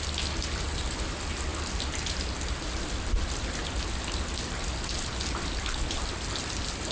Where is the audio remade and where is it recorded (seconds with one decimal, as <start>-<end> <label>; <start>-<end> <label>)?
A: 0.0-6.9 recorded